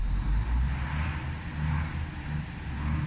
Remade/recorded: recorded